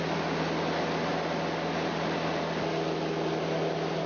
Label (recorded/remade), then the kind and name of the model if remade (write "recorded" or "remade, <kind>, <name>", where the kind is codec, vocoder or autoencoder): recorded